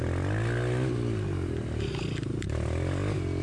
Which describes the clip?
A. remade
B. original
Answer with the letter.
B